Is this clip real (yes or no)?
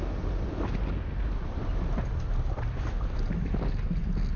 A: yes